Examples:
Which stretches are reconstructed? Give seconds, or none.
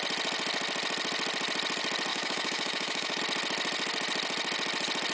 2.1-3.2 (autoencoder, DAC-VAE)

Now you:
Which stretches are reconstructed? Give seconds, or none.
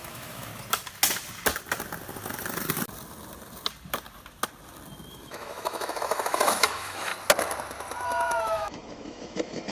0.0-0.5 (autoencoder, DAC-VAE); 5.1-7.1; 8.4-9.7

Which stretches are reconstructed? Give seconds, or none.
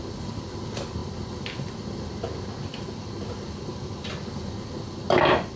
none